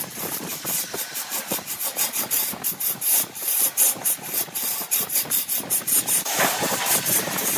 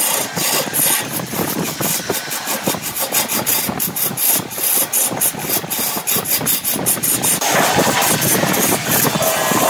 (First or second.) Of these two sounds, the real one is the second